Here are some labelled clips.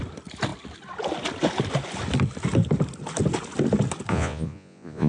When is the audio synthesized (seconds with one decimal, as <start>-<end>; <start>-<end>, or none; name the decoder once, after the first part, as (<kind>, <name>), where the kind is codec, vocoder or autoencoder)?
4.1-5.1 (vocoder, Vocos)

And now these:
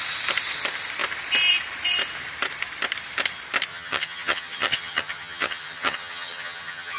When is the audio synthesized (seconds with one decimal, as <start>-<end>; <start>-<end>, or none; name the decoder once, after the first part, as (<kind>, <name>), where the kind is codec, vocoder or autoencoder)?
3.7-7.0 (vocoder, HiFi-GAN)

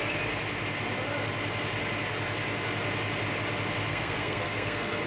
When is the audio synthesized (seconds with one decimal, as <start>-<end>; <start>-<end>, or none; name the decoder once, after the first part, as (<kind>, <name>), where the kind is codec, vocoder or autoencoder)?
3.9-5.1 (codec, SNAC)